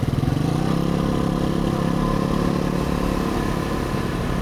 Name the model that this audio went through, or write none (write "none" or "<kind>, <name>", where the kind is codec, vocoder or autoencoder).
none